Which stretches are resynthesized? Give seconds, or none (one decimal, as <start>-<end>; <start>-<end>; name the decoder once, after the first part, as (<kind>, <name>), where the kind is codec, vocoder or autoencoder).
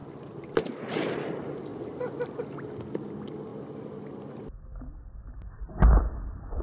none